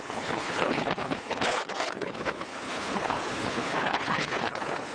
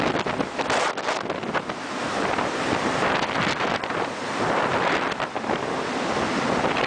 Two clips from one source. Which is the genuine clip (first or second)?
second